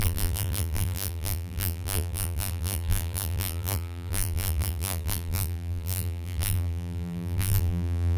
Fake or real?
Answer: fake